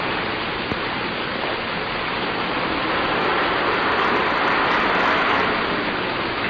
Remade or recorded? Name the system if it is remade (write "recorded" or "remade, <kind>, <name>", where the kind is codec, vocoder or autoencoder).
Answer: recorded